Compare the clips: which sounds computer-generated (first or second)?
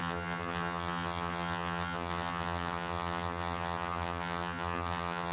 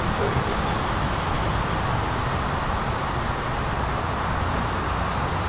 first